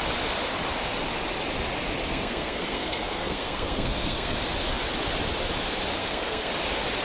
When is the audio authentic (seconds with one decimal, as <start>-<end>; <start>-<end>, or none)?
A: 0.0-2.0; 4.4-6.0; 6.5-7.0